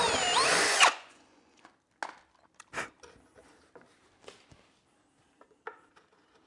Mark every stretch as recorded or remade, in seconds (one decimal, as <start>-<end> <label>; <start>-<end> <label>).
0.0-0.5 recorded; 0.5-1.7 remade; 1.7-6.5 recorded